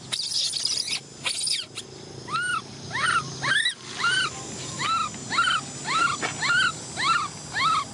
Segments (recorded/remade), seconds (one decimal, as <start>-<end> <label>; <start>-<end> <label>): 0.0-7.9 recorded